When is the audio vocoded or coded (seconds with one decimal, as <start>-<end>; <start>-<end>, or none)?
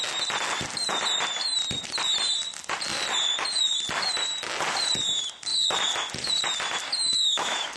7.1-7.8